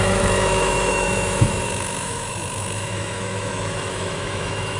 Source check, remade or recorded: remade